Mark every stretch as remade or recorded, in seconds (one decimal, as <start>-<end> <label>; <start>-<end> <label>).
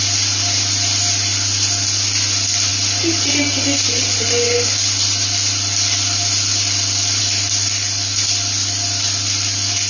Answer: 0.0-9.9 recorded